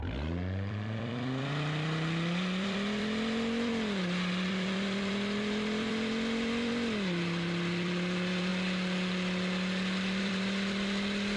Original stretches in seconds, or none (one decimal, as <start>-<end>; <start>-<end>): 8.5-10.2